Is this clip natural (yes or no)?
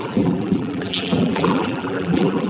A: no